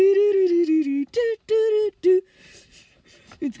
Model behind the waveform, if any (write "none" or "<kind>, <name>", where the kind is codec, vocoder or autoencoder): none